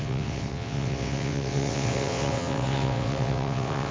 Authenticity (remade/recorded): remade